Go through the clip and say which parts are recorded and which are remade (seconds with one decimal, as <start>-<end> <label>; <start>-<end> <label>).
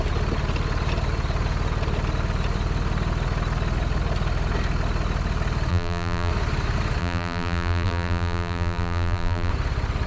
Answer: 0.0-5.7 recorded; 5.7-6.3 remade; 6.3-7.0 recorded; 7.0-9.5 remade; 9.5-10.1 recorded